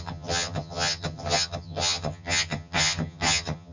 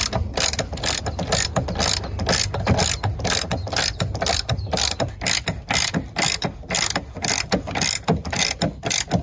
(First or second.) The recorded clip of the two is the second